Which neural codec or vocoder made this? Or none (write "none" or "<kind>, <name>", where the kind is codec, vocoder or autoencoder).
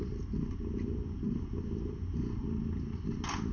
none